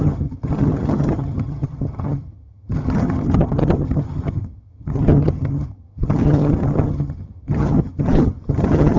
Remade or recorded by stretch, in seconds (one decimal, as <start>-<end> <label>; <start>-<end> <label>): 0.0-9.0 remade